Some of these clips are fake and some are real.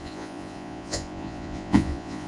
fake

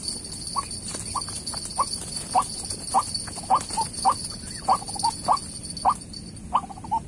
real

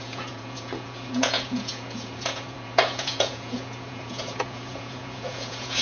fake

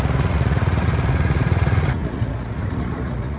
fake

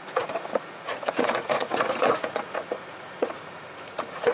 fake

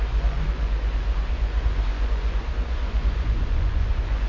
fake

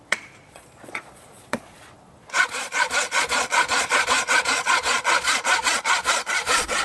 fake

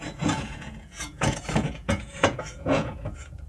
fake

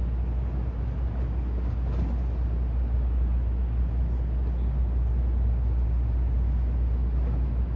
real